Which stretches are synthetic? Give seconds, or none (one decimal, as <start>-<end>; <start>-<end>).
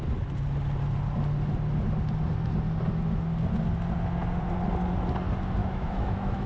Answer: 5.6-6.5